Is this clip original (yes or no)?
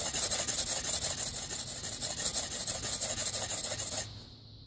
yes